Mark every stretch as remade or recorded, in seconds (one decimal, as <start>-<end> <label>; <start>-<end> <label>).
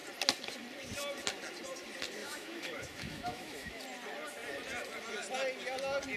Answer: 0.0-2.2 recorded; 2.2-3.8 remade; 3.8-6.2 recorded